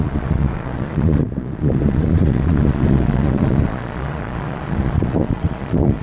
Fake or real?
fake